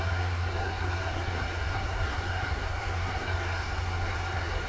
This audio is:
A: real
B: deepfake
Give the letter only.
B